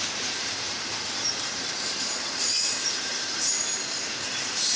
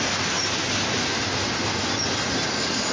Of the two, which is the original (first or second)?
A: second